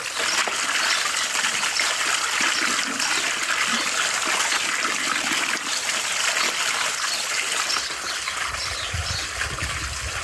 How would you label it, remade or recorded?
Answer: recorded